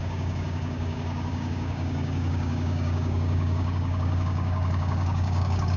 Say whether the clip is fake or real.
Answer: fake